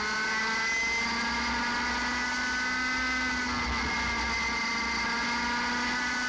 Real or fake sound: real